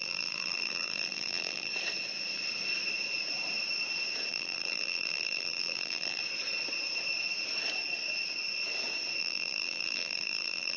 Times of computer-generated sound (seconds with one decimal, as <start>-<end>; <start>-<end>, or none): 0.0-1.7; 4.3-6.2; 9.2-10.8